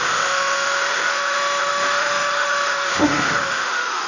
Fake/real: fake